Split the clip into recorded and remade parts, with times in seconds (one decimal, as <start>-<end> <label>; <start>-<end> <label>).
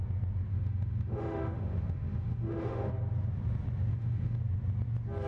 0.0-0.5 recorded; 0.5-2.9 remade; 2.9-3.9 recorded; 3.9-4.4 remade; 4.4-5.3 recorded